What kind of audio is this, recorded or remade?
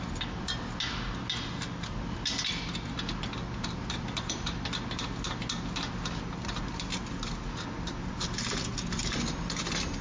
recorded